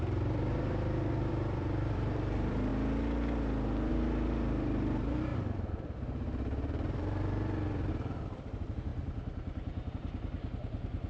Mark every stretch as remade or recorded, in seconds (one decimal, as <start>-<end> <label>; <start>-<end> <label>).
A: 0.0-2.7 remade; 2.7-3.9 recorded; 3.9-8.9 remade; 8.9-9.9 recorded; 9.9-11.1 remade